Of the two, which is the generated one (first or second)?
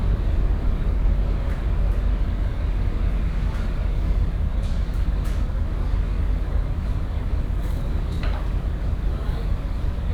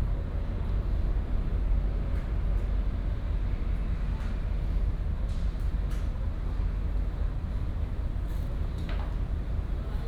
first